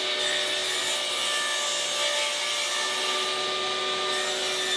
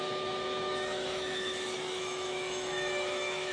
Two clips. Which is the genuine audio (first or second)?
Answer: first